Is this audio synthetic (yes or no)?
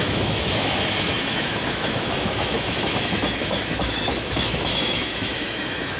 yes